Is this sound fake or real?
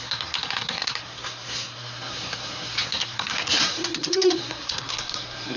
fake